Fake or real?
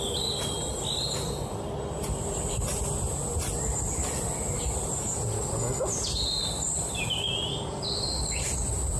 real